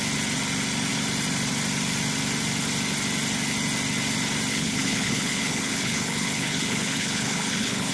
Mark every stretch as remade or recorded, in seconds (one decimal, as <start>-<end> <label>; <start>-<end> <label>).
0.0-4.5 recorded; 4.5-7.9 remade